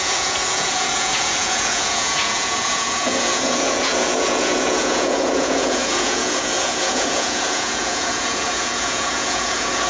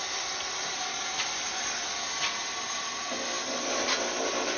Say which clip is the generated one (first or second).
first